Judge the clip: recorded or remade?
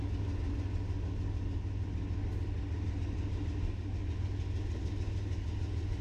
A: recorded